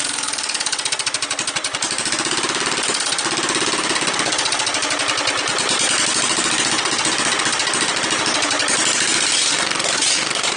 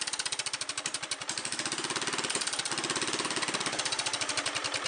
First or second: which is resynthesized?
second